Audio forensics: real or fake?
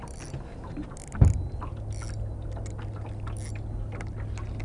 real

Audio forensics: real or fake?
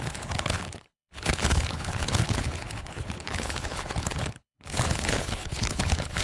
fake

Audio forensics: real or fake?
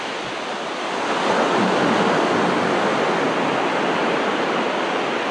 real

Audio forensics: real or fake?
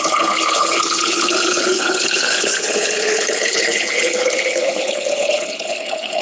fake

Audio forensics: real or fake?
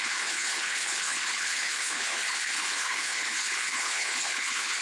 fake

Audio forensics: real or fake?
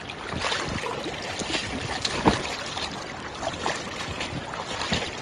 real